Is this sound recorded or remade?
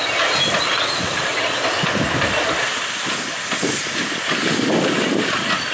recorded